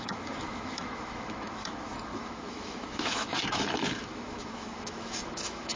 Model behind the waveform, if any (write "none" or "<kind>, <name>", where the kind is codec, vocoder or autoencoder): autoencoder, DAC-VAE